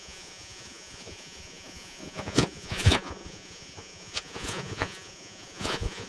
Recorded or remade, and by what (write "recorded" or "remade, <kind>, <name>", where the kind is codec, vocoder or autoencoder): remade, vocoder, Vocos